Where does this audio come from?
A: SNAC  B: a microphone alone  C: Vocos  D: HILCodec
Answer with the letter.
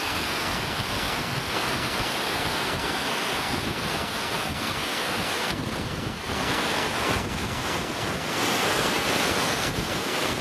A